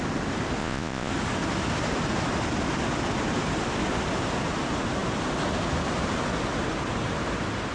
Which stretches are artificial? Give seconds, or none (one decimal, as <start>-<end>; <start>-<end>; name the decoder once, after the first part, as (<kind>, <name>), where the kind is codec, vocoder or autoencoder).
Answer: 0.6-1.1 (vocoder, Vocos)